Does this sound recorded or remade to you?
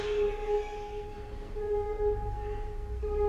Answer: remade